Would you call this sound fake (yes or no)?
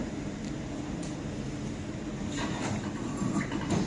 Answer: no